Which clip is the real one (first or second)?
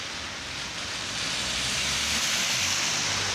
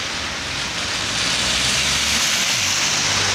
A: second